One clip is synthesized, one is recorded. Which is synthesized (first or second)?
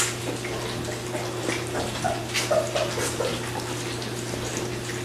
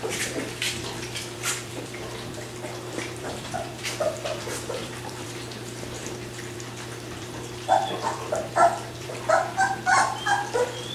second